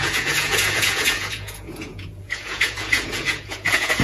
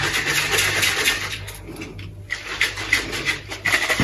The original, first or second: second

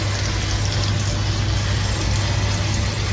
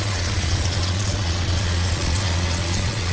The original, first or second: first